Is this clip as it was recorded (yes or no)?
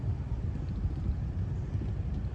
yes